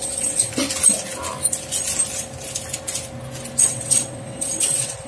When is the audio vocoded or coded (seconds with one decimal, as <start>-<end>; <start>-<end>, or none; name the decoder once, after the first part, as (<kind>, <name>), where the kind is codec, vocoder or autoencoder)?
0.0-0.5 (vocoder, WaveNeXt); 3.6-5.1